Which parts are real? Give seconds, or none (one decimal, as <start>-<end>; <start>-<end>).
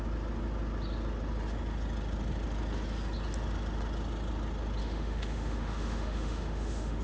0.0-4.8